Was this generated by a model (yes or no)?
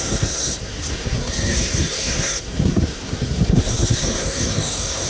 yes